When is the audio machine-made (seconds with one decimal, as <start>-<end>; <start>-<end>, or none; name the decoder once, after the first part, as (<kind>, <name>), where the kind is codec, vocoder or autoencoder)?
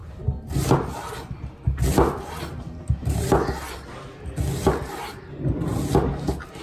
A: none